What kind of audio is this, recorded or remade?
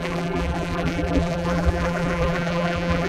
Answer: remade